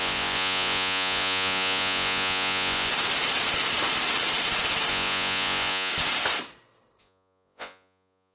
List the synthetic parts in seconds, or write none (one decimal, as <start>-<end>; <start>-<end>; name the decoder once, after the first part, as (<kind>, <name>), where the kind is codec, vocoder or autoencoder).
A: 0.0-2.9 (vocoder, Vocos); 4.9-5.9; 7.0-8.3